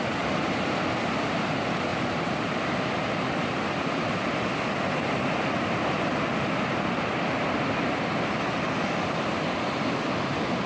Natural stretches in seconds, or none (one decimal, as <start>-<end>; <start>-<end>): 0.0-1.9; 2.5-10.7